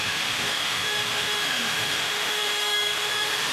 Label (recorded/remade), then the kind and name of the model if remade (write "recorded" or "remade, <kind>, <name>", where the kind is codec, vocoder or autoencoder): remade, autoencoder, DAC-VAE